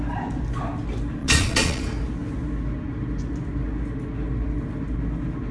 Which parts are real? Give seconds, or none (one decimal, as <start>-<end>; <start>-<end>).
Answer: 0.0-1.2; 1.8-5.5